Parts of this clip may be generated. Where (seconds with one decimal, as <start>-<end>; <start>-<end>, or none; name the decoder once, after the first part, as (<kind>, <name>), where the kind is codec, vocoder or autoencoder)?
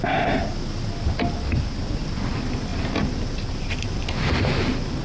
none